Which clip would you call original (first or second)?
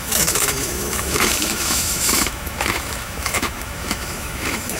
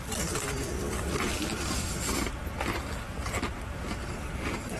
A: second